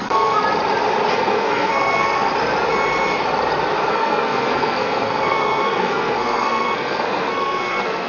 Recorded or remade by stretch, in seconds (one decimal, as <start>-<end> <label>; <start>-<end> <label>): 0.0-0.4 remade; 0.4-1.1 recorded; 1.1-2.3 remade; 2.3-3.9 recorded; 3.9-8.1 remade